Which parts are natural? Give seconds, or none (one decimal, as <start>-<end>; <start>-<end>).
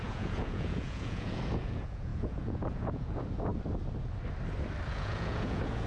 3.5-4.9